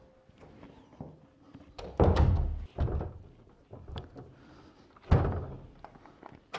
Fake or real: real